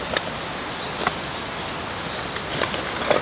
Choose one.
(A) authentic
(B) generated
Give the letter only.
A